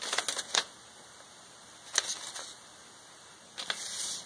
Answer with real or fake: real